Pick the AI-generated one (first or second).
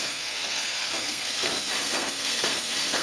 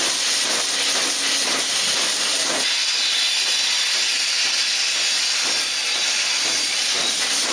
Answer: first